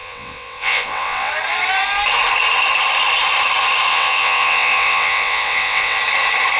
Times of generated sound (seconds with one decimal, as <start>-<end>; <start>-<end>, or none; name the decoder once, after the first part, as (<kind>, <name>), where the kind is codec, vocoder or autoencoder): 0.0-1.3 (vocoder, WaveNeXt); 3.9-6.0